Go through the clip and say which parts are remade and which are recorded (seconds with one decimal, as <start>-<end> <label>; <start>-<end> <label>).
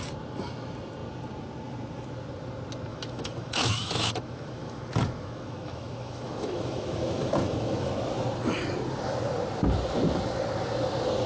0.0-2.9 recorded; 2.9-7.9 remade; 7.9-11.3 recorded